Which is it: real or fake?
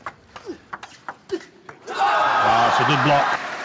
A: real